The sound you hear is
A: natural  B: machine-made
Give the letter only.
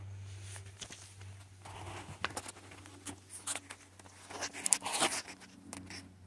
A